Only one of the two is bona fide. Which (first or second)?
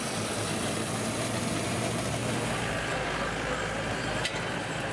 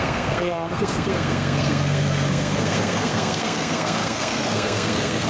first